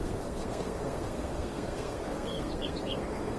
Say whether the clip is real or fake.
fake